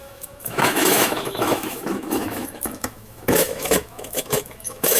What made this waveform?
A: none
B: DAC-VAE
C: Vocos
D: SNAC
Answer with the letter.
B